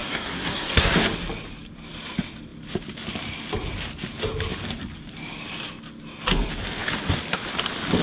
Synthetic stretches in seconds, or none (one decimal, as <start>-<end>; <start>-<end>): 0.0-0.9